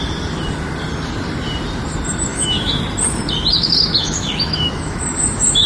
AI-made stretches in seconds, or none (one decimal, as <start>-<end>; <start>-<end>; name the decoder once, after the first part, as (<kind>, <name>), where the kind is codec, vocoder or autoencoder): 2.3-2.8 (autoencoder, DAC-VAE); 3.5-5.7